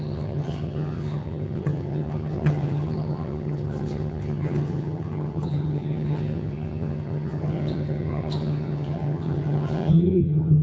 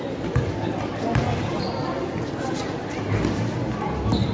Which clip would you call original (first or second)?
second